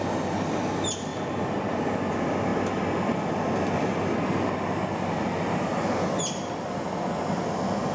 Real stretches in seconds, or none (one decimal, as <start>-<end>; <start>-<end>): 0.0-7.9